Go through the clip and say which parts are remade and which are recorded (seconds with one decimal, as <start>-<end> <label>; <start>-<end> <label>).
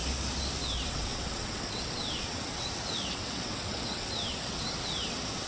0.0-0.6 recorded; 0.6-5.5 remade